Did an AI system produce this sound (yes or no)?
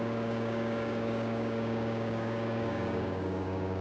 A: yes